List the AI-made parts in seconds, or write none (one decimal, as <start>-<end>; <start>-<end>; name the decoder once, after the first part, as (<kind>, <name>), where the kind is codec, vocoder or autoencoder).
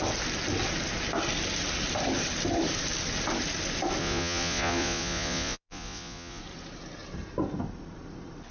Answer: 4.0-6.4 (vocoder, Vocos)